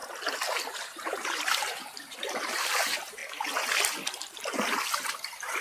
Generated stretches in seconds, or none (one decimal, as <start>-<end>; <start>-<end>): 0.7-3.2; 5.0-5.6